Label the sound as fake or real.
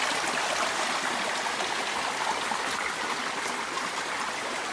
real